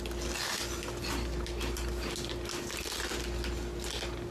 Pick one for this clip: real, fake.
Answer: real